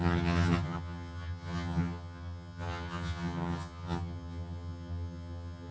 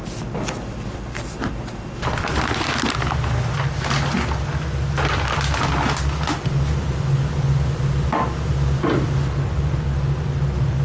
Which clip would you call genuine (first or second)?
second